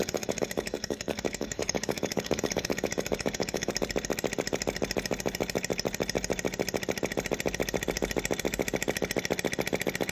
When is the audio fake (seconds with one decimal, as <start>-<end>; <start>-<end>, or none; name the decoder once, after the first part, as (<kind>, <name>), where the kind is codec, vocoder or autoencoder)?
0.0-3.7 (codec, DAC)